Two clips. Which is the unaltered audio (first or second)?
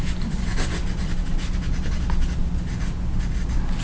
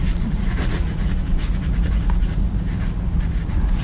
first